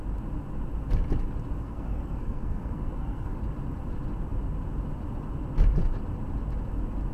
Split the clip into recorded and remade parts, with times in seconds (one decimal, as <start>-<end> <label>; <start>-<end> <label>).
0.0-1.6 recorded; 1.6-3.4 remade; 3.4-7.1 recorded